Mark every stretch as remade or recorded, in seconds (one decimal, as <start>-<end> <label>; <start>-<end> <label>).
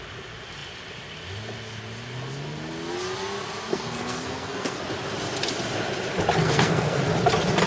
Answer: 0.0-3.7 recorded; 3.7-4.8 remade; 4.8-6.4 recorded; 6.4-7.0 remade; 7.0-7.7 recorded